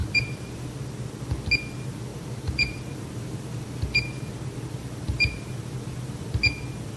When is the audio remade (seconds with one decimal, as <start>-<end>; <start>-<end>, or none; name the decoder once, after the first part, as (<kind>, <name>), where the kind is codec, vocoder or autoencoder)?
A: 0.0-0.7 (vocoder, BigVGAN v2); 2.1-6.3